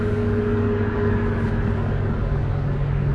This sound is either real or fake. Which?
fake